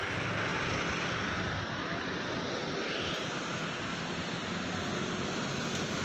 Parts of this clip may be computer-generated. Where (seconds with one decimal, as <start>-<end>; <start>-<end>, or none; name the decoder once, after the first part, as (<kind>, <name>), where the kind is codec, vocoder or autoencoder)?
none